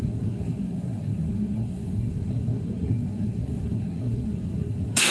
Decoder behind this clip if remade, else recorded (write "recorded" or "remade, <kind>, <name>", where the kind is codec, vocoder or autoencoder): remade, codec, SNAC